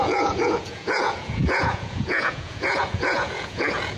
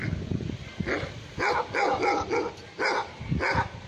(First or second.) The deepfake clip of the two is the first